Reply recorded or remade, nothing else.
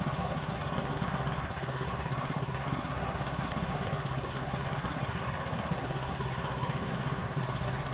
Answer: remade